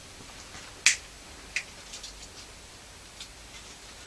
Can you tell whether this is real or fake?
real